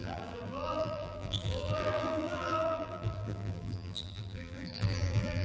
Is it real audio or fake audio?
fake